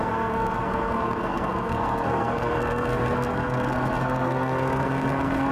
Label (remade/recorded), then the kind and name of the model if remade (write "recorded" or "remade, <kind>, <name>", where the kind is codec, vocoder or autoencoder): remade, codec, SNAC